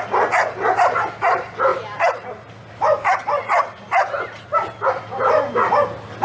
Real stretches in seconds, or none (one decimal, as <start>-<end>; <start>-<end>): 0.0-4.5; 5.7-6.2